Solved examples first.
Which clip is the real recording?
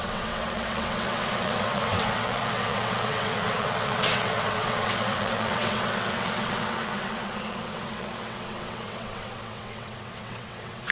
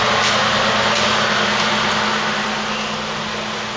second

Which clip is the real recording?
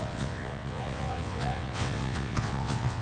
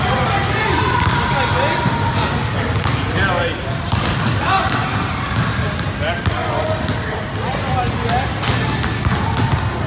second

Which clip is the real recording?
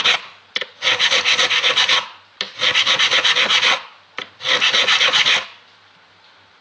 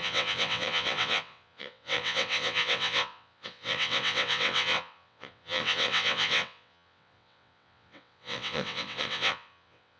first